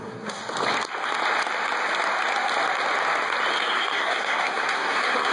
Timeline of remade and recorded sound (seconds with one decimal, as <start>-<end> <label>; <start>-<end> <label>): 0.0-0.4 remade; 0.4-3.6 recorded; 3.6-5.3 remade